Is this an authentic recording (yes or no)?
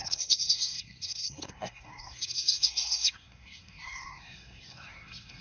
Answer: no